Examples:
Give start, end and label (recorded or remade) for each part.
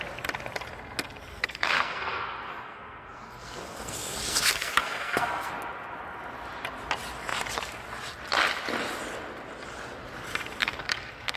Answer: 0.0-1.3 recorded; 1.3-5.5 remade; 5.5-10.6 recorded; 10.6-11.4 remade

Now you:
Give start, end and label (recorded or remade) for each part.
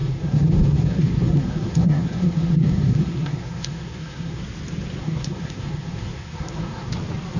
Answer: 0.0-4.4 remade; 4.4-5.0 recorded; 5.0-6.9 remade; 6.9-7.4 recorded